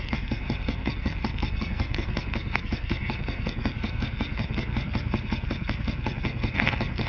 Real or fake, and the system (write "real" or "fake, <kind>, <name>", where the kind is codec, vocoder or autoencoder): fake, codec, SNAC